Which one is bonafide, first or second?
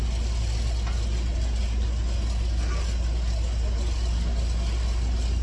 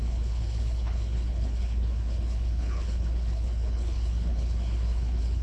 first